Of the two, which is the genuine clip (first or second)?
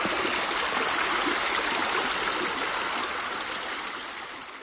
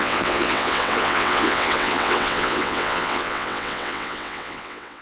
first